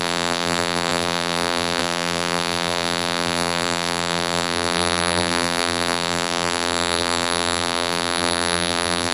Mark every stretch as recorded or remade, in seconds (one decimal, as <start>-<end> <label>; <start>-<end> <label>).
0.0-9.1 remade